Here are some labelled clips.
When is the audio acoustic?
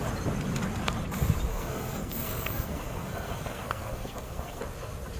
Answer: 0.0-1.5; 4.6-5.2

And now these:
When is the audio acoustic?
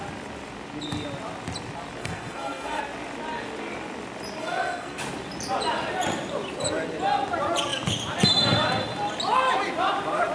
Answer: 0.0-2.0; 2.8-4.4; 5.0-10.3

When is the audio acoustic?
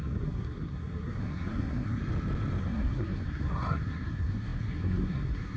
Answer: 2.0-2.6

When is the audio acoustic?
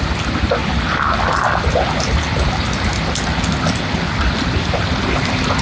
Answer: 0.0-5.6